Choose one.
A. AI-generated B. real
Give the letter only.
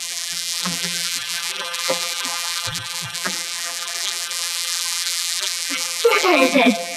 A